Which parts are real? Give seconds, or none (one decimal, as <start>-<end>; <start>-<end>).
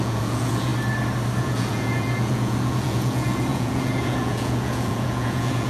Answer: 0.7-1.4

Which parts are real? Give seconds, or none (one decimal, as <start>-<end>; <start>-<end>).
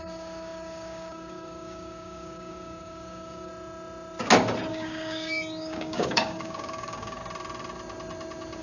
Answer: 3.5-4.7; 7.2-8.6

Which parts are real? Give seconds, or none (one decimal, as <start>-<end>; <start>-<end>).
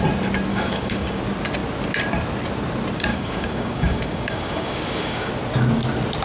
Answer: 0.0-0.5; 1.2-3.1; 5.3-6.2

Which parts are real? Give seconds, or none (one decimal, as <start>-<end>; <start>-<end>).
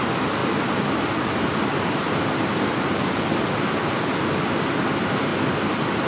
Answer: 0.0-6.1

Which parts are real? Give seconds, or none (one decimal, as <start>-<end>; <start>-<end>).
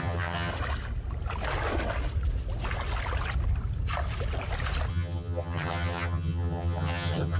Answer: 0.5-4.9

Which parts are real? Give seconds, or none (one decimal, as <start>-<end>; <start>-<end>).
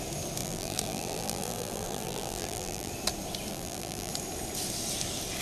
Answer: 0.0-0.4; 2.9-3.5; 4.1-5.4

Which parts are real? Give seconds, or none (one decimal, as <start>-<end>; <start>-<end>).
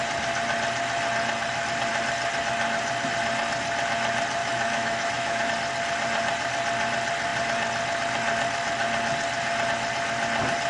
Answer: 0.0-4.4; 5.5-10.7